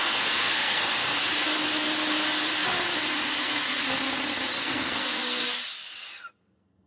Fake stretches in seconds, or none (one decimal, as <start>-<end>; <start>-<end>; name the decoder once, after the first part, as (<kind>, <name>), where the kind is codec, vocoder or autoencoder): 0.0-1.0 (codec, SNAC); 3.3-3.8; 4.6-5.5; 6.4-6.9